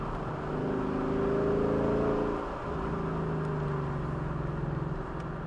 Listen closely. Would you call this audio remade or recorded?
recorded